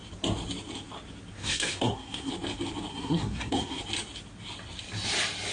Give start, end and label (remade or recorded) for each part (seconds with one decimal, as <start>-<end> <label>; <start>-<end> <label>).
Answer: 0.0-1.4 recorded; 1.4-2.3 remade; 2.3-2.9 recorded; 2.9-3.8 remade; 3.8-5.5 recorded